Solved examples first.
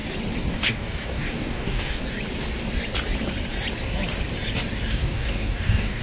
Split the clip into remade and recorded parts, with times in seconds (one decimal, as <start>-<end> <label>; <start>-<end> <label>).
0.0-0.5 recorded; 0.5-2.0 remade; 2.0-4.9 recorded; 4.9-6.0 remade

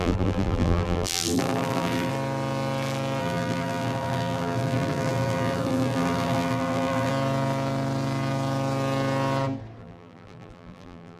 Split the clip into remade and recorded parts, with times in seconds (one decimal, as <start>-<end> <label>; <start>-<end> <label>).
0.0-2.1 remade; 2.1-3.2 recorded; 3.2-7.1 remade; 7.1-9.8 recorded; 9.8-11.2 remade

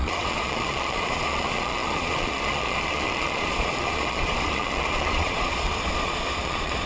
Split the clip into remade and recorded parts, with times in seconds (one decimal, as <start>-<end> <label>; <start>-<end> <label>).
0.0-6.9 remade